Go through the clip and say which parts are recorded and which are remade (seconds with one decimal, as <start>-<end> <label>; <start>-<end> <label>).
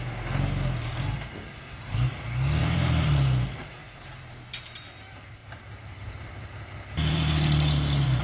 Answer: 0.0-2.6 recorded; 2.6-3.1 remade; 3.1-3.8 recorded; 3.8-4.5 remade; 4.5-5.4 recorded; 5.4-8.2 remade